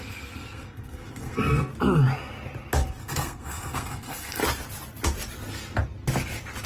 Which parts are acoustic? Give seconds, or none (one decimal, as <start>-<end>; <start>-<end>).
1.7-3.0; 4.4-6.7